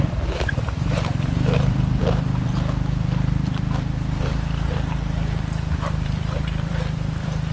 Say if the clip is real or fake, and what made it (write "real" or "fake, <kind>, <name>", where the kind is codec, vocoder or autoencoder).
fake, vocoder, BigVGAN v2